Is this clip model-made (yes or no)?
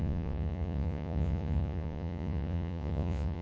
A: yes